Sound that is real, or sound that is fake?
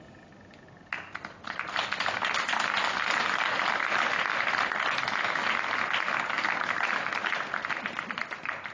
real